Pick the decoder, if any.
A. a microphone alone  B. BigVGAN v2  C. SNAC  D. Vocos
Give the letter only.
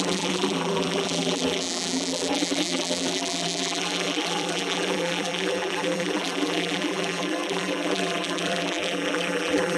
B